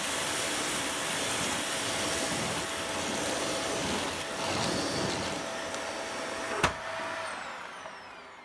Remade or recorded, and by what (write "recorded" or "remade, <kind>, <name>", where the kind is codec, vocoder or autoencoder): recorded